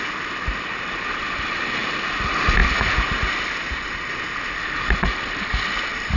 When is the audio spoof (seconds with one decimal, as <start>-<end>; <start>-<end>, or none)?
none